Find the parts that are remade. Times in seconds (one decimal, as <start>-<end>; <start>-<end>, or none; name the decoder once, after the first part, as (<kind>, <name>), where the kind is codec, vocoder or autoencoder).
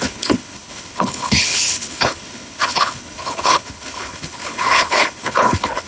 0.0-5.9 (codec, HILCodec)